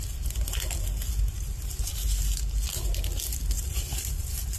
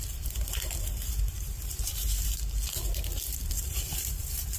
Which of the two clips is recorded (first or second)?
first